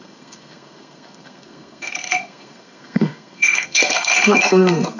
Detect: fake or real fake